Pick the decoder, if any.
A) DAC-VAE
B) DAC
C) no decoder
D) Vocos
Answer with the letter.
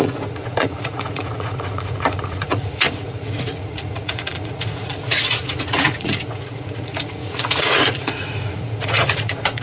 D